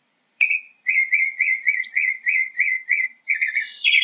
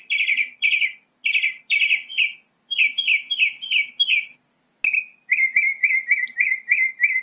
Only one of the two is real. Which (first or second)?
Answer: second